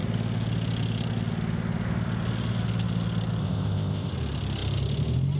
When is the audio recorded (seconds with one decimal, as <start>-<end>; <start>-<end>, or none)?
0.0-3.4; 4.1-5.4